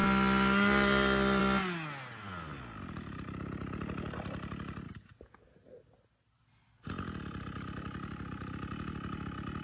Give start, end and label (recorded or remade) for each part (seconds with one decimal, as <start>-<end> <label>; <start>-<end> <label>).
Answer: 0.0-9.6 recorded